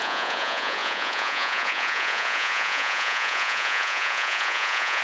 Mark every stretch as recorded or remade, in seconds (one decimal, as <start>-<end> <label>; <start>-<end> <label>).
0.0-5.0 remade